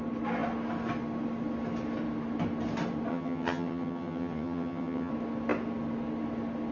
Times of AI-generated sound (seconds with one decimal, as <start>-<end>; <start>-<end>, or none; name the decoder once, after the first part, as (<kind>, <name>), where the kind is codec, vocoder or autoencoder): 3.1-5.1 (vocoder, HiFi-GAN)